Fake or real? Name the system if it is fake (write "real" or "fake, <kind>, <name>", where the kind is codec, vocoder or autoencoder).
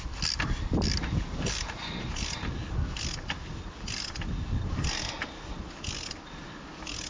real